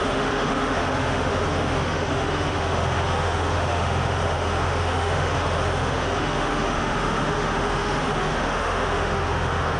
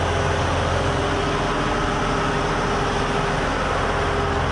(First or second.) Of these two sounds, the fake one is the first